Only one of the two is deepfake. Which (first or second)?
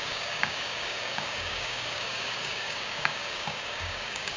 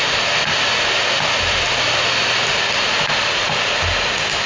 first